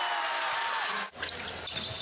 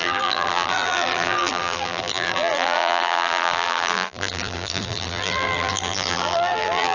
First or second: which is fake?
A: second